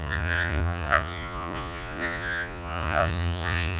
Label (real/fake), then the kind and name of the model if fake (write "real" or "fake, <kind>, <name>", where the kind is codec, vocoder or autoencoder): fake, vocoder, Vocos